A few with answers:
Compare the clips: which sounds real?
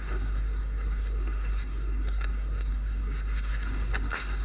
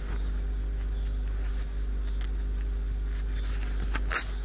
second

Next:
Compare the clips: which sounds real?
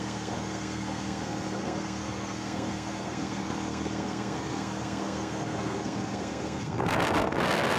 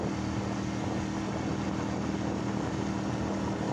second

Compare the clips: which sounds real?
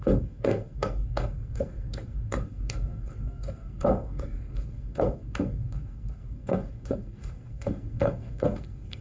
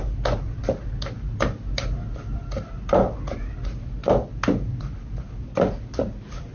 second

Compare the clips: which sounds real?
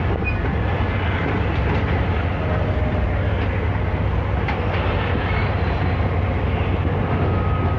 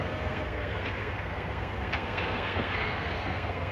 first